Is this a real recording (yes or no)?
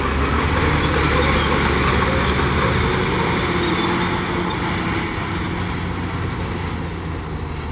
yes